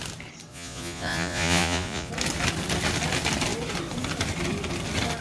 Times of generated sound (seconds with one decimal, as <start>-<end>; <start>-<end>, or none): 0.5-2.1

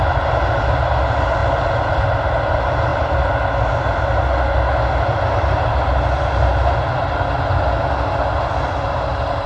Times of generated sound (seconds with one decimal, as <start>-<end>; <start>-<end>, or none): none

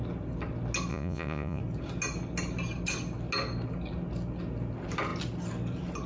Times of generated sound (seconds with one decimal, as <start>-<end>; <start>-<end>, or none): 0.9-1.6

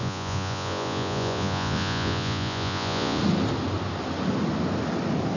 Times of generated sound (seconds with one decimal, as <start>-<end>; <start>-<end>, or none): 0.0-3.2

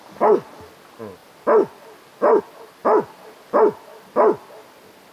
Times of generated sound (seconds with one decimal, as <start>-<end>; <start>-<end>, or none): none